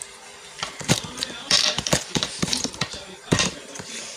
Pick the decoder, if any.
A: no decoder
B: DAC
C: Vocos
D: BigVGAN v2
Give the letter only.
D